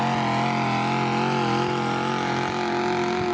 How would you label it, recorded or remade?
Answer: recorded